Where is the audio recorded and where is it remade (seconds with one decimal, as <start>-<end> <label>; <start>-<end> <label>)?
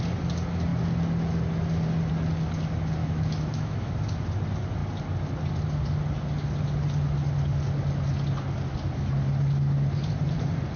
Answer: 0.0-3.0 recorded; 3.0-3.9 remade; 3.9-10.8 recorded